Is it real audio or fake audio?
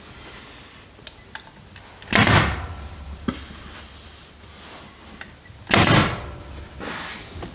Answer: real